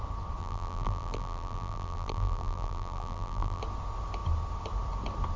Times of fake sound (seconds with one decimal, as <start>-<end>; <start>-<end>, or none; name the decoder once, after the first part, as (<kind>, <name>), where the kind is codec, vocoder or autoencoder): 0.4-3.6 (vocoder, BigVGAN v2)